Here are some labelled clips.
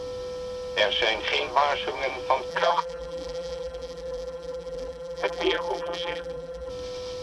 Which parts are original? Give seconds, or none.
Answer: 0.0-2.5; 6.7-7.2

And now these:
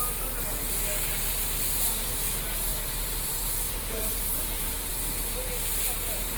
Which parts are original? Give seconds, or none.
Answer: 0.0-2.7; 4.9-6.4

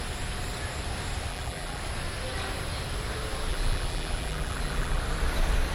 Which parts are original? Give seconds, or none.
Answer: 0.0-1.3; 1.8-3.5; 5.0-5.7

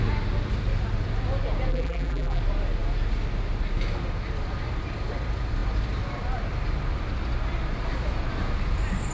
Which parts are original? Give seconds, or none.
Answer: 0.0-1.7; 2.4-9.1

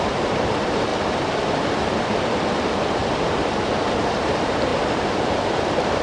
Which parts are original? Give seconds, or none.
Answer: 0.9-1.8; 3.0-4.0

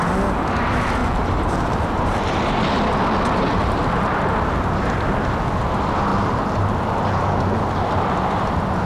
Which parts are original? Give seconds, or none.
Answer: 0.0-1.0; 2.0-3.6; 4.1-6.1; 8.5-8.9

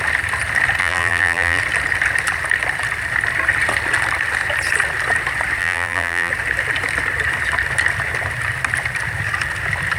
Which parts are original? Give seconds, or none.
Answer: 0.0-0.8; 1.6-5.6; 6.3-10.0